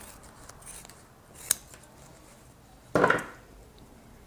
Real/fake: fake